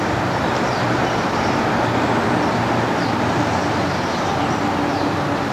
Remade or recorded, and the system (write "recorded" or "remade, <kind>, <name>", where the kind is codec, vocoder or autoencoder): recorded